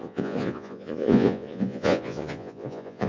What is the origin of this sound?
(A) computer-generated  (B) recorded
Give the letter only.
A